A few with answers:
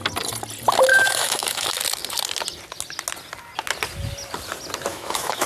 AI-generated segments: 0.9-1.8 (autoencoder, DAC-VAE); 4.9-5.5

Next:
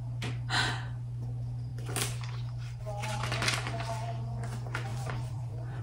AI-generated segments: 4.9-5.8 (vocoder, BigVGAN v2)

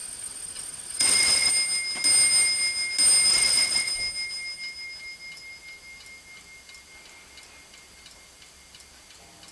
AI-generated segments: 0.0-1.5 (vocoder, WaveNeXt); 3.3-3.9

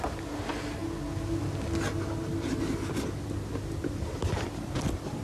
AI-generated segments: none

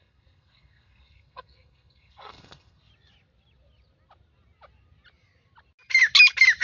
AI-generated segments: 0.0-2.9 (codec, SNAC)

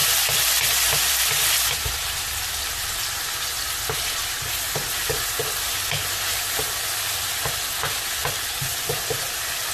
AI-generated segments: 0.0-2.5 (vocoder, BigVGAN v2); 8.2-9.7

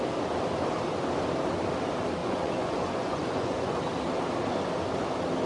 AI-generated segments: 2.2-3.8 (vocoder, Vocos)

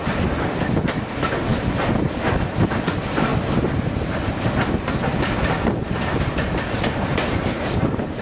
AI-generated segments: none